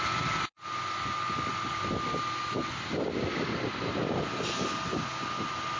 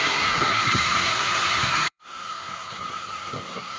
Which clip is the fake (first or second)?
second